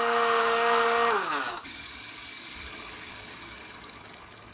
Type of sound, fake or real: fake